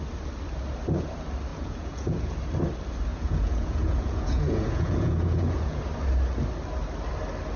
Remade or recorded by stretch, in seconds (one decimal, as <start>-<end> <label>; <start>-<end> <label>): 0.0-1.5 recorded; 1.5-2.3 remade; 2.3-3.1 recorded; 3.1-5.8 remade; 5.8-7.6 recorded